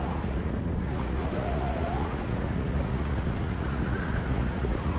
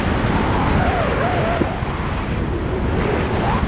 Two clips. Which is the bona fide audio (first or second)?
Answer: second